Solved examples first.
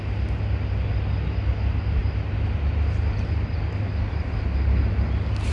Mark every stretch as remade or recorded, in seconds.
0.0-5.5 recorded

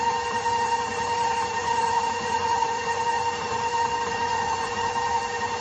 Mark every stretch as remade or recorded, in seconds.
0.0-1.6 recorded; 1.6-3.0 remade; 3.0-4.1 recorded; 4.1-4.9 remade; 4.9-5.6 recorded

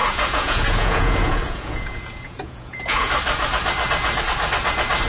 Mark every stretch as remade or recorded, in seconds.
0.0-3.1 remade; 3.1-5.1 recorded

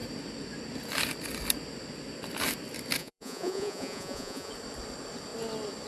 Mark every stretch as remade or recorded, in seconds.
0.0-3.0 recorded; 3.0-4.5 remade; 4.5-5.9 recorded

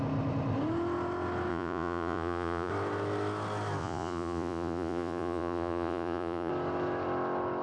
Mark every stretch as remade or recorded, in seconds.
0.0-1.5 recorded; 1.5-2.7 remade; 2.7-3.8 recorded; 3.8-6.5 remade; 6.5-7.6 recorded

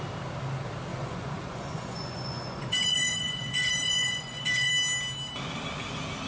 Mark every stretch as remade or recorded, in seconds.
0.0-0.9 recorded; 0.9-4.7 remade; 4.7-6.3 recorded

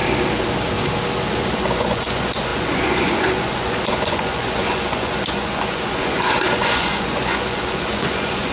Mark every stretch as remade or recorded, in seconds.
0.0-1.4 recorded; 1.4-8.5 remade